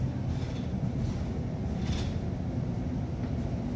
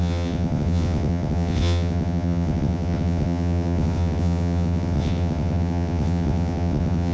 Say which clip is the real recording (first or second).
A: first